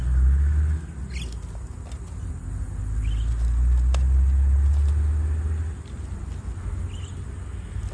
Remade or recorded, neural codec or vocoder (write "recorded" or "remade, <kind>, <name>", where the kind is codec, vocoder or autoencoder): recorded